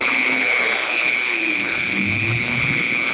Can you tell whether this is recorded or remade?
remade